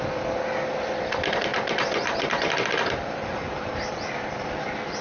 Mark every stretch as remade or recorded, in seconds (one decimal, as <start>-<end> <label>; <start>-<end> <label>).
0.0-5.0 recorded